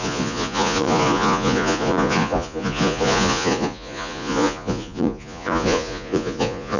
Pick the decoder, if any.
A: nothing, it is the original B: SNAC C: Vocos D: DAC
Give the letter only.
C